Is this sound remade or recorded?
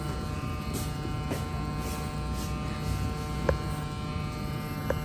recorded